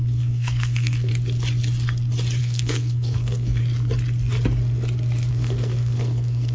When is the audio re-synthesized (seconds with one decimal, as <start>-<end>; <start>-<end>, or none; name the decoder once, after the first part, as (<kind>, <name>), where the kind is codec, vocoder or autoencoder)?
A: 0.0-1.1 (codec, SNAC); 2.4-3.6; 5.3-6.5